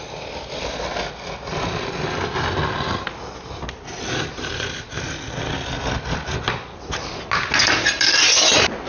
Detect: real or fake real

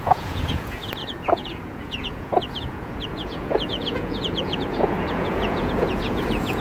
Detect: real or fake fake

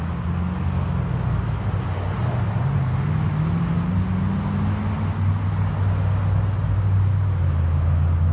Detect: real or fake real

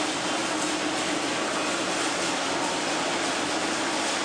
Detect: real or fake real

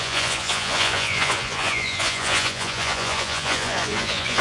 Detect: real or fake fake